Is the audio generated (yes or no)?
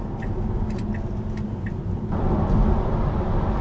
no